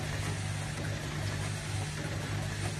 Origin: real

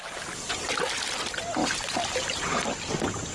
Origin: real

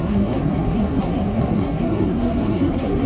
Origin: fake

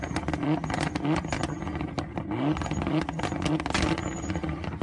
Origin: real